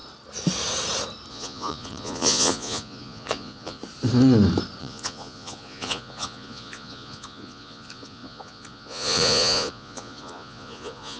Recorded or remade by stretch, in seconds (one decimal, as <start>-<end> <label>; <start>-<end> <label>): 0.0-1.3 recorded; 1.3-3.8 remade; 3.8-4.8 recorded; 4.8-11.2 remade